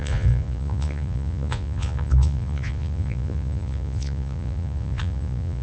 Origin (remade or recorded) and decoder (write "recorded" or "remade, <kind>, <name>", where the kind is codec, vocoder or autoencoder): remade, vocoder, Vocos